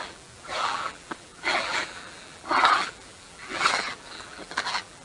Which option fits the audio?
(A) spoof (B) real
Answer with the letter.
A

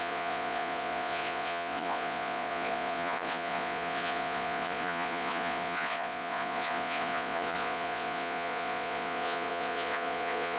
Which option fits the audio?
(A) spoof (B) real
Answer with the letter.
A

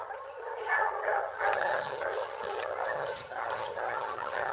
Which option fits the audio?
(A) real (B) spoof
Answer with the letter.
B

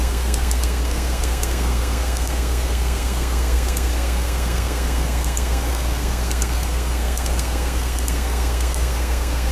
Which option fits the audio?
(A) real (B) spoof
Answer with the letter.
B